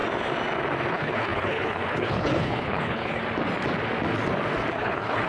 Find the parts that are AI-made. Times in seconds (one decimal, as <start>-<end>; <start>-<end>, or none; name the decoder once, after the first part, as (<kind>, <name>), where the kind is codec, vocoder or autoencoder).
0.9-3.2 (codec, HILCodec); 4.7-5.3